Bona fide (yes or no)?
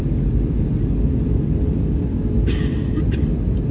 yes